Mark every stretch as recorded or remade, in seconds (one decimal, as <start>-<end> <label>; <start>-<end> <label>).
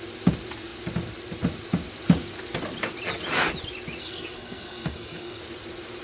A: 0.0-4.0 recorded; 4.0-5.4 remade; 5.4-6.0 recorded